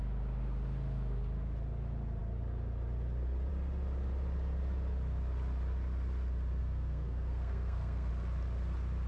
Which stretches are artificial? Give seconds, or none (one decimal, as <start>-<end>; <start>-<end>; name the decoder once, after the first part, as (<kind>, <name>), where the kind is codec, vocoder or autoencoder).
6.6-8.1 (codec, SNAC)